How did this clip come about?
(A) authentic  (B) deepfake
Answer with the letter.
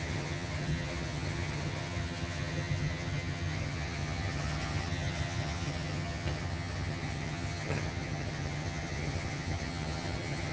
B